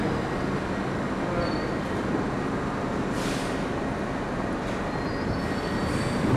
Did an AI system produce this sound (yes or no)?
no